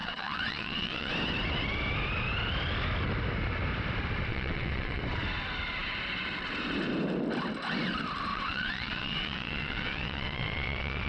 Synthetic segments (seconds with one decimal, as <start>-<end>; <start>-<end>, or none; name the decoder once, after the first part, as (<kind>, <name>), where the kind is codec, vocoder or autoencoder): 0.0-1.1 (vocoder, WaveNeXt); 4.3-5.0; 8.3-11.1

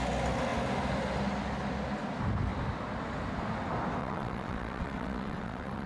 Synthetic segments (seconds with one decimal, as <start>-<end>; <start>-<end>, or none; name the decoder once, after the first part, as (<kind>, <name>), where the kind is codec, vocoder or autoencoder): 4.0-5.9 (vocoder, WaveNeXt)

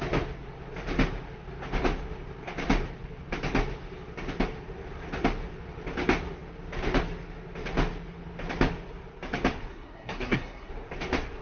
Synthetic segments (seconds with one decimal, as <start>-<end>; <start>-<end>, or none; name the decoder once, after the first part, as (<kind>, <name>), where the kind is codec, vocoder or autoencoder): 9.7-10.7 (codec, SNAC)

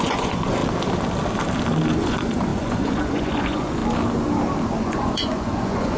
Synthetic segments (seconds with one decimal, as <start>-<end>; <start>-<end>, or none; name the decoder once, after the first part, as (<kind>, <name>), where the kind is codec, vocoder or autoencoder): 0.0-0.6 (vocoder, Vocos); 1.9-3.8; 4.8-6.0

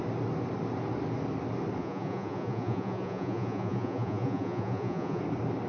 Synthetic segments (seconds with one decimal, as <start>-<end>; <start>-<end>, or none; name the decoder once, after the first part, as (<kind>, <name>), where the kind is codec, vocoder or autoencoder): 1.8-5.2 (vocoder, Vocos)

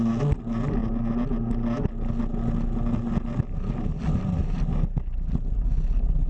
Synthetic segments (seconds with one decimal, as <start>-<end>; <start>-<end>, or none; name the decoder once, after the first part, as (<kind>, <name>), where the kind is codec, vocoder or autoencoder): none

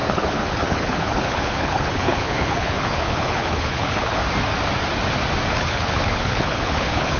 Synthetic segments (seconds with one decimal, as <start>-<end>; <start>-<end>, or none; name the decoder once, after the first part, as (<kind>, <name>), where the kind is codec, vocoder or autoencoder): 0.0-4.2 (codec, HILCodec); 5.5-7.2

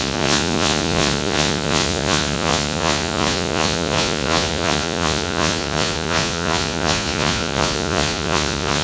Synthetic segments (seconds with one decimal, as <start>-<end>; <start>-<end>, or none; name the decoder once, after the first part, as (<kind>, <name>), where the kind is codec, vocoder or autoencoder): 0.0-8.8 (vocoder, Vocos)